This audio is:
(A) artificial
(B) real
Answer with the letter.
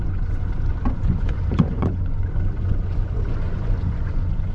A